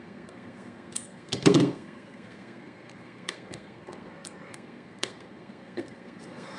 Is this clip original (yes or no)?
no